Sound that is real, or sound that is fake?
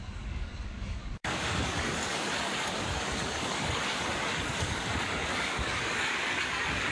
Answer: fake